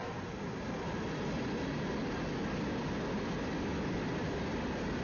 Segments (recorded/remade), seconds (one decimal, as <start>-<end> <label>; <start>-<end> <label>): 0.0-5.0 recorded